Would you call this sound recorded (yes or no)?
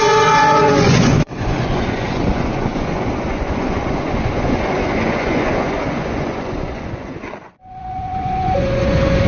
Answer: no